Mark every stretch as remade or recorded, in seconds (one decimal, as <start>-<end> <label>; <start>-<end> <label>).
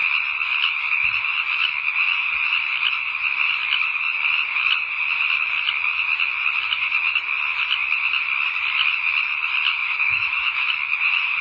0.0-9.8 recorded; 9.8-10.7 remade; 10.7-11.4 recorded